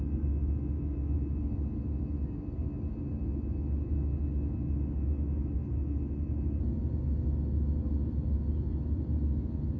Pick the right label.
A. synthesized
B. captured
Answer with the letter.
B